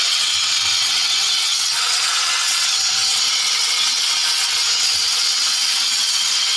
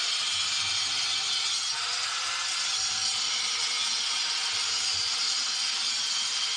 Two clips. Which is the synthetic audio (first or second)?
first